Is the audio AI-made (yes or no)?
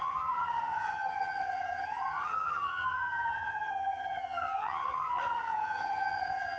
yes